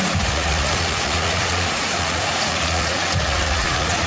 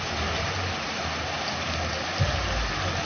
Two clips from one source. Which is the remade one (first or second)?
first